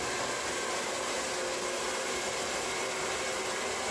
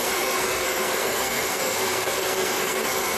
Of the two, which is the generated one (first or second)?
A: second